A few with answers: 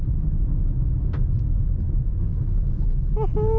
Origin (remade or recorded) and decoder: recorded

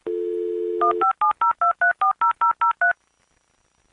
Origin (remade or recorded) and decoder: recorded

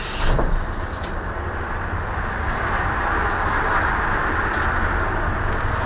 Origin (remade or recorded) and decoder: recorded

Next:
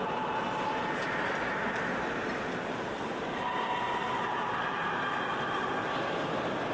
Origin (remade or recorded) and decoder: recorded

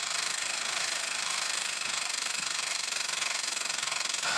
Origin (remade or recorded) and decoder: remade, autoencoder, DAC-VAE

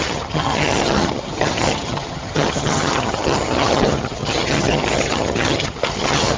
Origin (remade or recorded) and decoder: remade, vocoder, HiFi-GAN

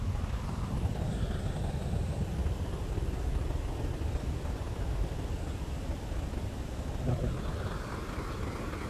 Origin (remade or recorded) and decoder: recorded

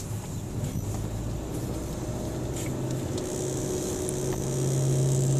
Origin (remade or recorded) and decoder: recorded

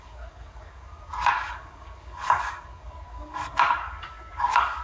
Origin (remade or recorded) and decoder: remade, codec, DAC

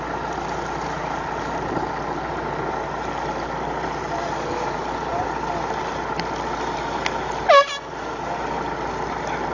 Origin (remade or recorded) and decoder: recorded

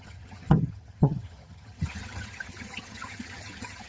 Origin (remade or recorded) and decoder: remade, vocoder, HiFi-GAN